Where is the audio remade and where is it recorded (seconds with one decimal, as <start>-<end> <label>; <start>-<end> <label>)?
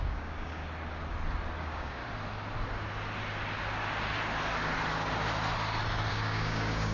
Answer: 0.0-0.6 remade; 0.6-1.6 recorded; 1.6-2.0 remade; 2.0-6.1 recorded; 6.1-6.9 remade